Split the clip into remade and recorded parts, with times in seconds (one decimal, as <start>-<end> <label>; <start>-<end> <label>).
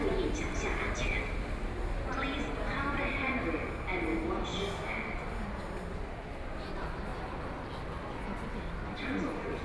0.0-9.6 recorded